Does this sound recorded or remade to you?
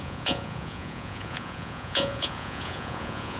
remade